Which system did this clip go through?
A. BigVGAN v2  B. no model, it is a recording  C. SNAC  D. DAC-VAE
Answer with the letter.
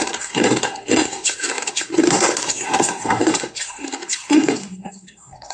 C